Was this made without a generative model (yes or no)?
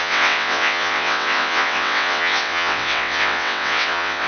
no